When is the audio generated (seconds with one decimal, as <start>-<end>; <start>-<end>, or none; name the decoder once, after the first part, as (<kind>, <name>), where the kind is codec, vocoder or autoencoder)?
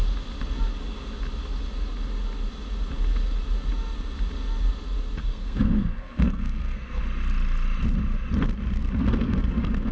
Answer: 5.2-7.0 (codec, SNAC); 8.8-9.9